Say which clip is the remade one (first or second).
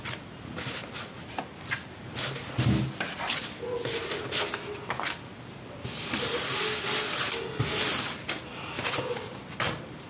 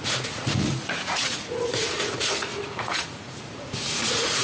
second